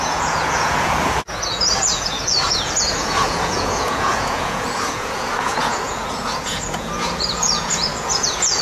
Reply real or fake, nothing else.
fake